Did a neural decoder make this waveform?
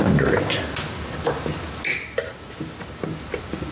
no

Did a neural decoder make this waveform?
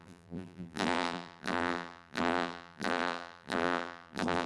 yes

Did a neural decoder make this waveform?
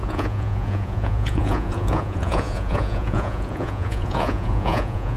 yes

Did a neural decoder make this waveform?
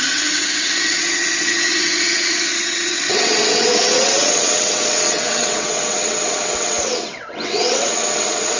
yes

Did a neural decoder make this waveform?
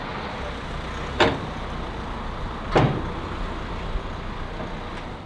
no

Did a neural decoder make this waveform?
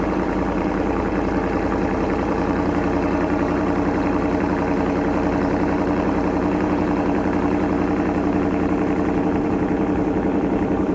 yes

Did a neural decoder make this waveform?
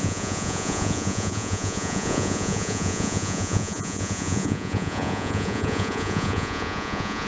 yes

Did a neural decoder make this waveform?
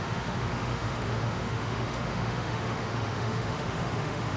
yes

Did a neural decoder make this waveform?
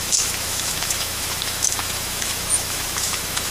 yes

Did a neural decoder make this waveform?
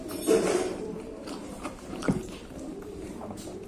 yes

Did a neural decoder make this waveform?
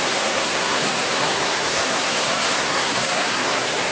yes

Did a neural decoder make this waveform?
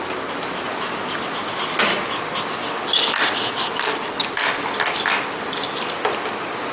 no